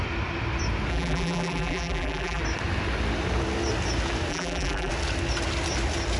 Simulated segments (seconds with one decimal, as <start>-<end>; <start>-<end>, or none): 0.9-2.4; 4.3-4.9